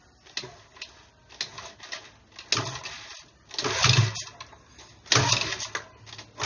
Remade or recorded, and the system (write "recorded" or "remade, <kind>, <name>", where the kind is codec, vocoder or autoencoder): recorded